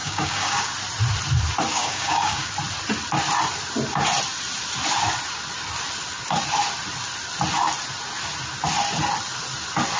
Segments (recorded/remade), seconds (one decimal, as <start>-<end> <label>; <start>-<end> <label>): 0.0-0.7 remade; 0.7-1.7 recorded; 1.7-2.5 remade; 2.5-10.0 recorded